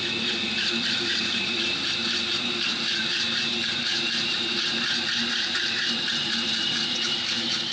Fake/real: fake